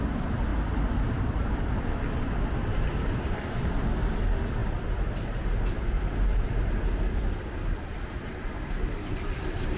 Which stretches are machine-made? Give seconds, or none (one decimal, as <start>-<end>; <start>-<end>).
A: 0.0-0.5; 1.1-9.8